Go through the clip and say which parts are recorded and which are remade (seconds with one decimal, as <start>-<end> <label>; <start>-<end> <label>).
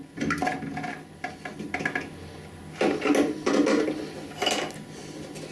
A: 0.0-5.5 recorded